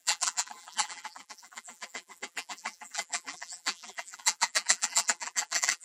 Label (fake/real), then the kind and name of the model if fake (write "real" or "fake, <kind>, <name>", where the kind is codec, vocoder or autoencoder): fake, vocoder, BigVGAN v2